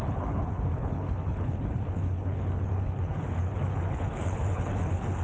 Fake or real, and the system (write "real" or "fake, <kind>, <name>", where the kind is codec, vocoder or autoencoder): fake, codec, HILCodec